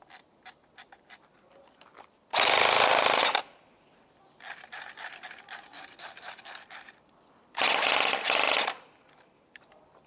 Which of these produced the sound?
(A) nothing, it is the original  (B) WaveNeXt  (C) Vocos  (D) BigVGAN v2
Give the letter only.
D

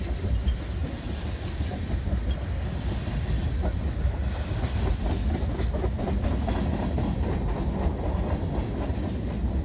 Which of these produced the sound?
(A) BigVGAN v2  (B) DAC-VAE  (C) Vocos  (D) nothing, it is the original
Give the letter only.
D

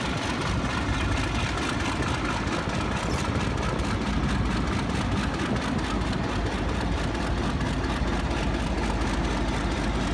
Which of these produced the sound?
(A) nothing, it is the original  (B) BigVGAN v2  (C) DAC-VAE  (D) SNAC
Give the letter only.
A